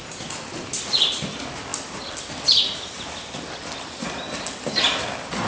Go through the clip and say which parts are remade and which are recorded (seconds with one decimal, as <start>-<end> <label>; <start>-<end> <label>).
0.0-5.5 recorded